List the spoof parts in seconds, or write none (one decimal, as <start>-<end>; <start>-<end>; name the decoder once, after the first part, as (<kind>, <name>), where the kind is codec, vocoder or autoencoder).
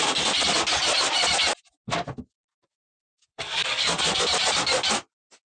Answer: 2.5-4.2 (codec, DAC)